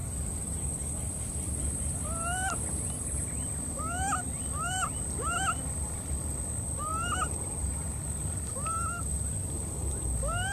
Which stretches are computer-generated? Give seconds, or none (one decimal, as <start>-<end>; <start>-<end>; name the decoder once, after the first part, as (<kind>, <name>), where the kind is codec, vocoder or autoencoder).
none